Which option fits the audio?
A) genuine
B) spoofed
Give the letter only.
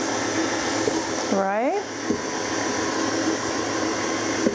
A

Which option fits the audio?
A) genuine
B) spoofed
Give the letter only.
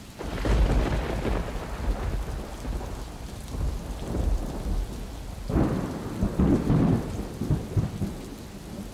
A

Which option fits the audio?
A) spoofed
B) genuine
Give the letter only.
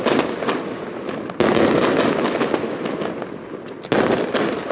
B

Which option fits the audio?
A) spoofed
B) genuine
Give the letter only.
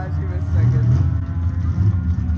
B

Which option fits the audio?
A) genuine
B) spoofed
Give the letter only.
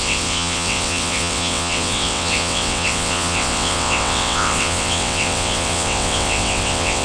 B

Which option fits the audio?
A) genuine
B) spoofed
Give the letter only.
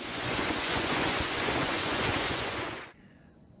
B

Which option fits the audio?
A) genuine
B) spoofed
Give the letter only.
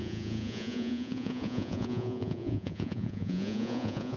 B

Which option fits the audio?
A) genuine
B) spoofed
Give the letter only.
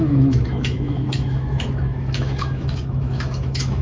B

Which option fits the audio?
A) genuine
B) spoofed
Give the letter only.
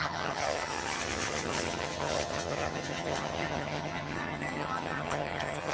B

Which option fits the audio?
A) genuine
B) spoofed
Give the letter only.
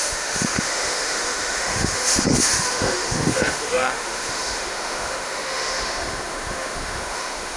B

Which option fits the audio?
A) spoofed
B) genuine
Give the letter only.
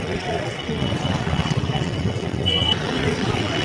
A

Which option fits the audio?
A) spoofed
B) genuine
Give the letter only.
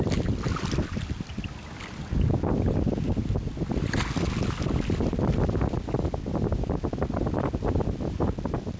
B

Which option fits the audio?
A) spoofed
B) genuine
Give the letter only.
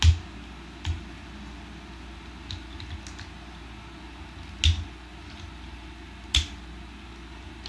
B